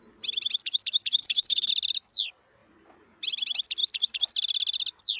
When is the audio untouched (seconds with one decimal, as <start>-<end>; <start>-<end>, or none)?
0.0-1.2; 1.7-5.2